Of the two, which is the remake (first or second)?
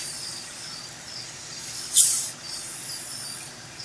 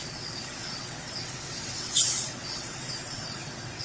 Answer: second